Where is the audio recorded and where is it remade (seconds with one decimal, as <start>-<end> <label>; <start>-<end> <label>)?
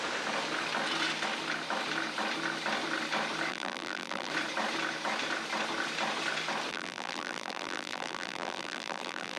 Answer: 0.0-3.5 recorded; 3.5-4.3 remade; 4.3-6.7 recorded; 6.7-9.4 remade